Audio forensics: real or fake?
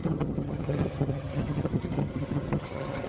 fake